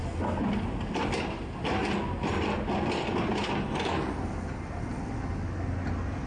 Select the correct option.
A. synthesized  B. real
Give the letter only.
B